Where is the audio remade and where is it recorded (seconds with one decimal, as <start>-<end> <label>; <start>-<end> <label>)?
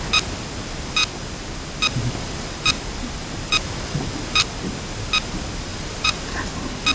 0.0-5.7 recorded; 5.7-6.5 remade; 6.5-6.9 recorded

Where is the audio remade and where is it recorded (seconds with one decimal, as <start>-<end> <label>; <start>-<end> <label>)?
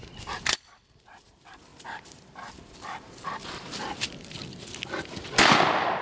0.0-4.4 remade; 4.4-6.0 recorded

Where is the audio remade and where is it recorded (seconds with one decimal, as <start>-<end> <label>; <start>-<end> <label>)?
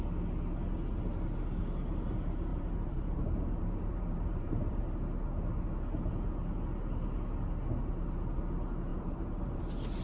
0.0-2.5 recorded; 2.5-4.8 remade; 4.8-8.9 recorded; 8.9-9.6 remade; 9.6-10.0 recorded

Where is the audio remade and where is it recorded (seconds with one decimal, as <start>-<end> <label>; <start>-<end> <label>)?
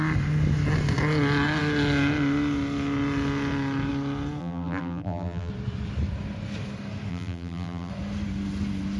0.0-4.4 recorded; 4.4-5.5 remade; 5.5-7.1 recorded; 7.1-7.9 remade; 7.9-9.0 recorded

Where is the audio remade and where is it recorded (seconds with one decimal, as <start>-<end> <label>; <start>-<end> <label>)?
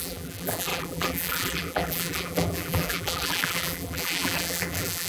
0.0-5.1 remade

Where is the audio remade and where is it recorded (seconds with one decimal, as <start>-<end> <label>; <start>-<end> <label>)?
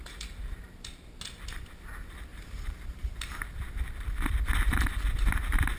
0.0-2.3 recorded; 2.3-3.8 remade; 3.8-5.8 recorded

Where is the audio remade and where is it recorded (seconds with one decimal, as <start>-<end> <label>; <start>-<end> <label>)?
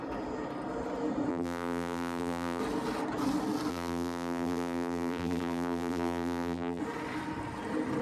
0.0-1.3 recorded; 1.3-2.6 remade; 2.6-3.7 recorded; 3.7-6.8 remade; 6.8-8.0 recorded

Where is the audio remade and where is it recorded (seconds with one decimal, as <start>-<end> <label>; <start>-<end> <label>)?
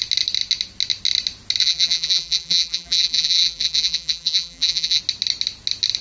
0.0-1.6 recorded; 1.6-5.0 remade; 5.0-6.0 recorded